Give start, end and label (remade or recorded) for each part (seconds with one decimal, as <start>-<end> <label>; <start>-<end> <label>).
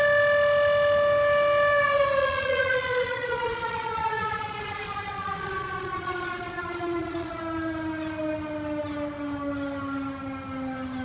0.0-2.2 recorded; 2.2-7.4 remade; 7.4-11.0 recorded